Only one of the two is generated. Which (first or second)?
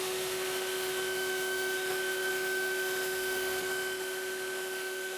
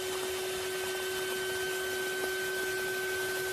first